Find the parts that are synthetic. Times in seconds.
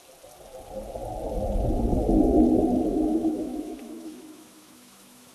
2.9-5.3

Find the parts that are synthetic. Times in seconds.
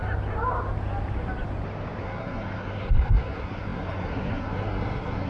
2.0-5.3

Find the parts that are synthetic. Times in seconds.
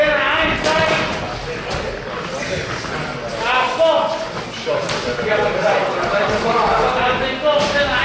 none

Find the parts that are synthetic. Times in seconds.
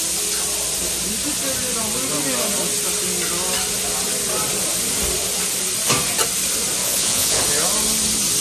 6.8-7.4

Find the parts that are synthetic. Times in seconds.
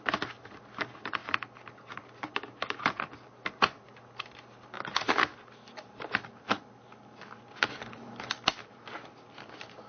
7.7-8.3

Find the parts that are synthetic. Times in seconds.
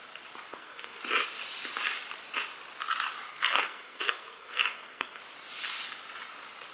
0.5-1.0; 3.3-5.2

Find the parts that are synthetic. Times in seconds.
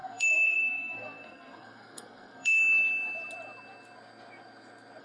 0.0-2.6